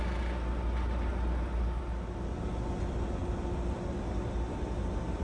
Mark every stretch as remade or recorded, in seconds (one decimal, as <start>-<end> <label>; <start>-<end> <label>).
0.0-5.2 recorded